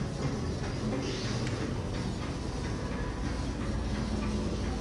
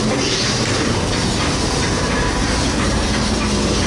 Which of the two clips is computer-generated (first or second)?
second